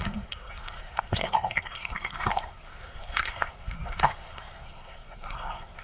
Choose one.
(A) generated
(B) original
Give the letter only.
A